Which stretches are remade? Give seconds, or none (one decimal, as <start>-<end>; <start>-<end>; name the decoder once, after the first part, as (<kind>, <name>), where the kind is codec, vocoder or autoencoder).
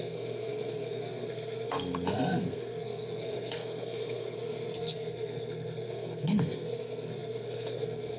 0.0-8.2 (codec, SNAC)